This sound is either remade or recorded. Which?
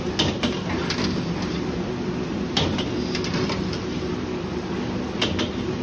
recorded